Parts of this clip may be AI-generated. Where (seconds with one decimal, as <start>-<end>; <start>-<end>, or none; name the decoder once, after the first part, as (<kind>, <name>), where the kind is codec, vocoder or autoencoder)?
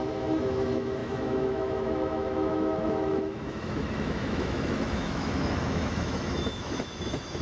0.0-7.4 (autoencoder, DAC-VAE)